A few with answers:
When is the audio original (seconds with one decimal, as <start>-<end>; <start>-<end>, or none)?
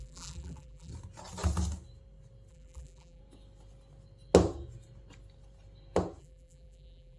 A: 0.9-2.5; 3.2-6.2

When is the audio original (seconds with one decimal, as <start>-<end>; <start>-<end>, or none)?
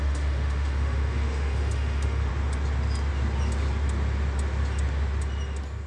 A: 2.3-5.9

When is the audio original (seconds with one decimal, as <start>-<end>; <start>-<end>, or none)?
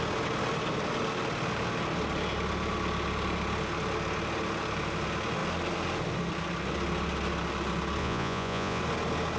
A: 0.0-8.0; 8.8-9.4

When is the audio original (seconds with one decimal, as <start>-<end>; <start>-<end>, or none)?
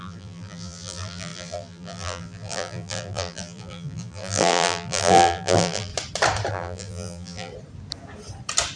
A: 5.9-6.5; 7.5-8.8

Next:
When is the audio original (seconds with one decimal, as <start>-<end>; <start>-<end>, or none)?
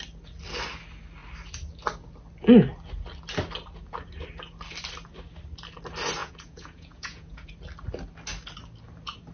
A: 0.0-6.2; 7.5-9.3